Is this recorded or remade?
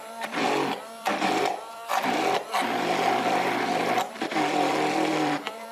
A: remade